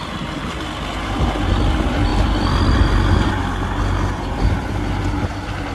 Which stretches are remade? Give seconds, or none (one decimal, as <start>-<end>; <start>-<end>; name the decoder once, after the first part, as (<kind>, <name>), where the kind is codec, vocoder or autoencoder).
none